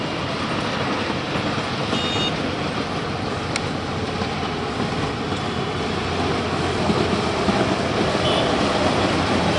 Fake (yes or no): no